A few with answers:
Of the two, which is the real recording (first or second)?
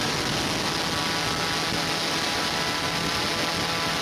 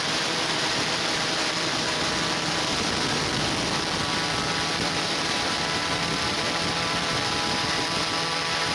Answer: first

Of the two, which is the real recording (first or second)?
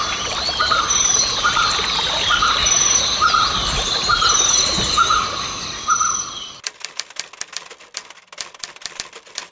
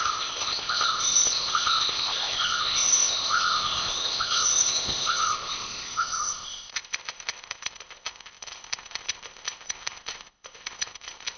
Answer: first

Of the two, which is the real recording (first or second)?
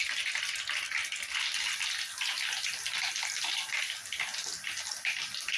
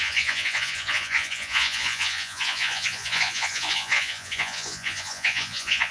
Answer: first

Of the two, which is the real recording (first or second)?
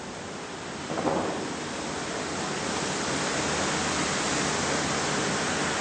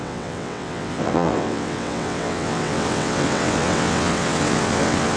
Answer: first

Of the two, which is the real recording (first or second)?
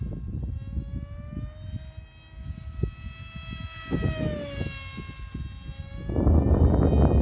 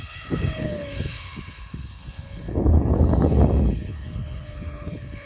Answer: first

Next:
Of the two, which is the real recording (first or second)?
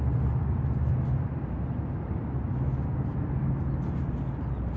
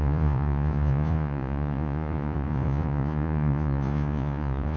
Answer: first